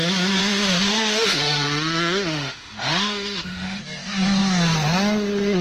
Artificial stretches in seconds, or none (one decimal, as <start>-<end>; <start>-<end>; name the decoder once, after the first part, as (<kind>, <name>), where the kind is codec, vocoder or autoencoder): 0.4-3.8 (autoencoder, DAC-VAE)